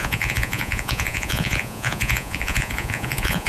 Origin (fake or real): fake